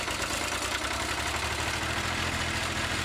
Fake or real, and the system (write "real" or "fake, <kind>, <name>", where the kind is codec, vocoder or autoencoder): real